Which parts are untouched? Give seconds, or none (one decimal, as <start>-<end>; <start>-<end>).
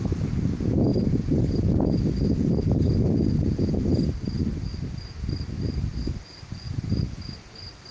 0.0-7.9